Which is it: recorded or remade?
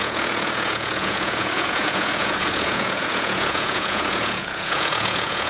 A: remade